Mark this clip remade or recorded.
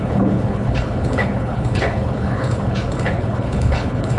remade